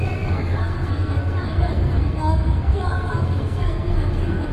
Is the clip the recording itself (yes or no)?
no